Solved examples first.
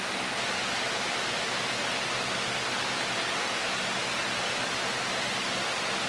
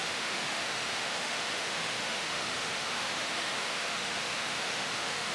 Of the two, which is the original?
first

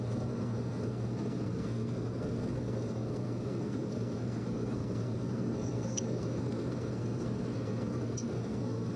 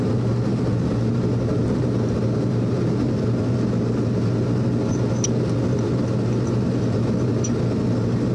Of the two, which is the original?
second